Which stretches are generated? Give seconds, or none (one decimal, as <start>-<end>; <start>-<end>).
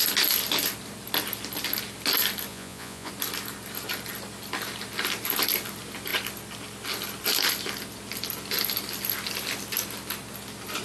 2.5-3.1